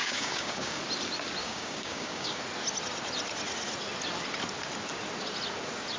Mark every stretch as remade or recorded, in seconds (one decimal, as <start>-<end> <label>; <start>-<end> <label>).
0.0-0.8 remade; 0.8-1.4 recorded; 1.4-2.4 remade; 2.4-6.0 recorded